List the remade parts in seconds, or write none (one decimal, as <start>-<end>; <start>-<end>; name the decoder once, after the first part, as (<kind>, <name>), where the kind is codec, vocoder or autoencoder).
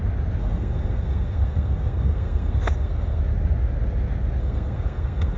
0.4-3.2 (codec, SNAC); 4.4-5.4